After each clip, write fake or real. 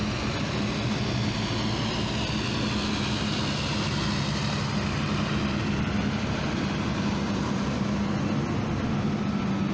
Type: real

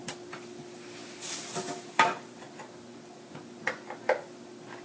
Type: real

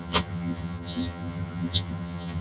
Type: fake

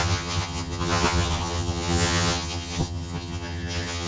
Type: fake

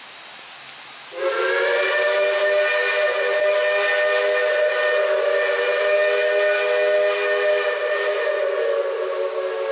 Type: real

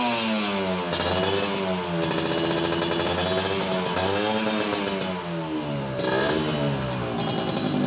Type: real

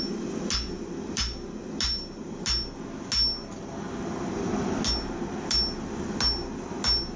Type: real